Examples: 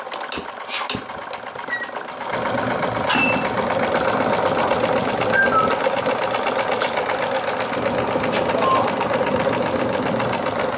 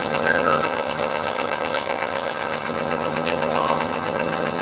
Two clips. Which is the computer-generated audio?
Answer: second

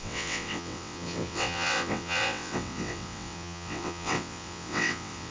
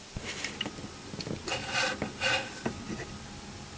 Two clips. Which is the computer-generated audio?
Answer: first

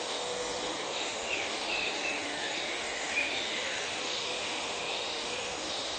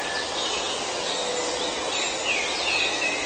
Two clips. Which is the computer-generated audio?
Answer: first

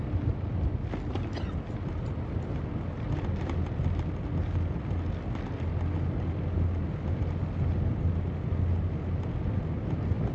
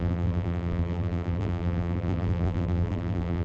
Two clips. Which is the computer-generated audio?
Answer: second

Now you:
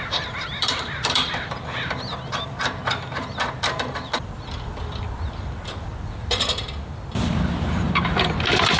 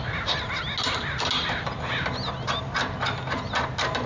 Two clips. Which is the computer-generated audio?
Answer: first